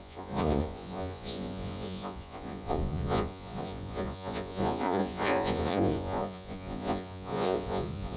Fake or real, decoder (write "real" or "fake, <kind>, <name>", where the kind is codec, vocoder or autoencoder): fake, vocoder, Vocos